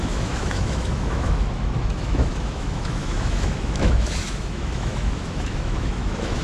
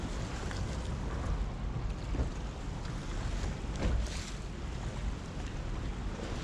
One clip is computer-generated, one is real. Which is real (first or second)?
second